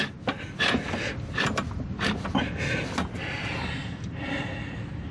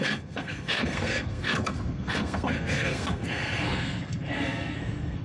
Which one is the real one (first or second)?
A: first